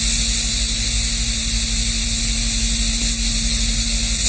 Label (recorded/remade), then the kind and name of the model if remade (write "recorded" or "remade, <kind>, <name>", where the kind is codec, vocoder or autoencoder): recorded